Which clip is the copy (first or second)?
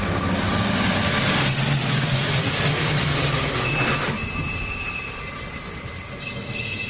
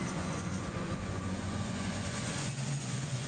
second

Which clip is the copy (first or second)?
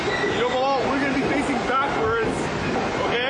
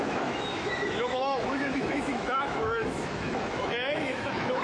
second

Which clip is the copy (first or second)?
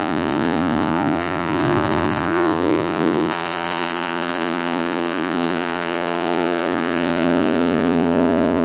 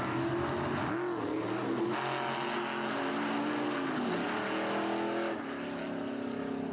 first